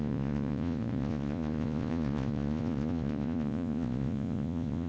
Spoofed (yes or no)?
yes